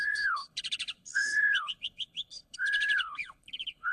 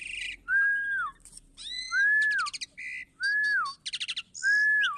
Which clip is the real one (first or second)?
second